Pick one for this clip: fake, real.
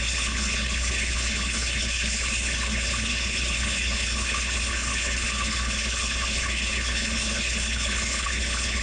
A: fake